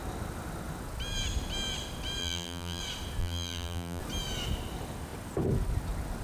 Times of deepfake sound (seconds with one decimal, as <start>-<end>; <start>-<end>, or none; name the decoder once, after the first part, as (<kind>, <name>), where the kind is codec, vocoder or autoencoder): 2.2-2.8 (vocoder, BigVGAN v2); 3.2-4.0

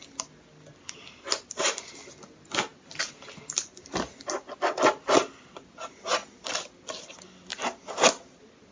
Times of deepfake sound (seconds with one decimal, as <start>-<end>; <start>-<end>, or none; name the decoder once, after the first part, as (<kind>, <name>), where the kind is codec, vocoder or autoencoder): none

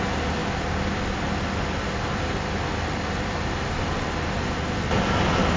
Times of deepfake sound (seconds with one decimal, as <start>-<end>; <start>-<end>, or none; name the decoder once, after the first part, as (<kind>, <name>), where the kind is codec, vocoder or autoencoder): none